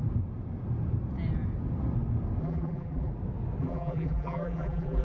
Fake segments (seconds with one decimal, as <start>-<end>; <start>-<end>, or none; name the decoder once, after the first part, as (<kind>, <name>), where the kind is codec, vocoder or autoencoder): 2.4-3.1 (vocoder, BigVGAN v2); 3.6-5.0